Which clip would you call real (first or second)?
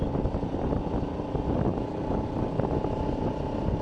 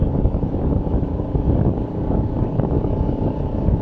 first